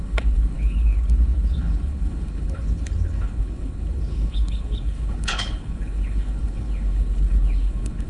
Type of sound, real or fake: fake